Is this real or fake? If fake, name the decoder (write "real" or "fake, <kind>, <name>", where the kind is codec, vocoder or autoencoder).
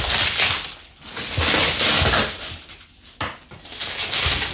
real